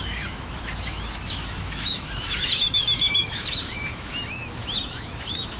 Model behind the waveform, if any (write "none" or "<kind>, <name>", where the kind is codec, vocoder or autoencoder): autoencoder, DAC-VAE